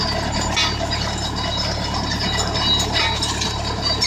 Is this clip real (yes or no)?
yes